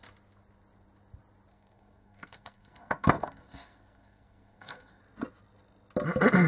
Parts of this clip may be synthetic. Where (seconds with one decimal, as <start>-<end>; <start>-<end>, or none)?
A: 1.5-5.0

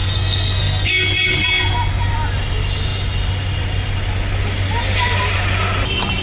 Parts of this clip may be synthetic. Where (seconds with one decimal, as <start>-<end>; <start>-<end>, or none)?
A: 0.0-0.9

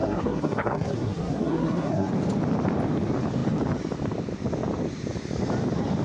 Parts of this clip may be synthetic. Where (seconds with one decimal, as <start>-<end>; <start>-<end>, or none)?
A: 0.0-2.1

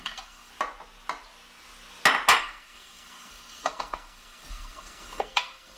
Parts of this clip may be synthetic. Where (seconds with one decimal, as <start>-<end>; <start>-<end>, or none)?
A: 0.0-0.5; 2.4-5.8

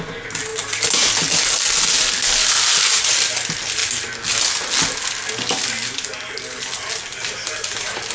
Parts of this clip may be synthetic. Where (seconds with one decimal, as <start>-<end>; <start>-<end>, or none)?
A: none